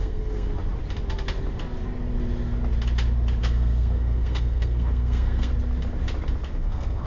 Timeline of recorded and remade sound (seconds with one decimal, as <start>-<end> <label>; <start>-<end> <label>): 0.0-0.5 remade; 0.5-3.4 recorded; 3.4-5.5 remade; 5.5-6.5 recorded; 6.5-7.1 remade